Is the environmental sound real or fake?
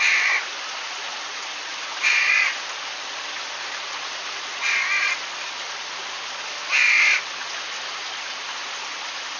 real